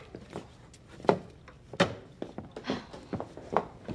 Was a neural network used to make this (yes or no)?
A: no